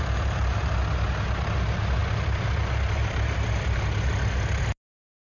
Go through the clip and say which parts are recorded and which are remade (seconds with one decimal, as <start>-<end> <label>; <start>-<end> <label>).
0.0-5.2 recorded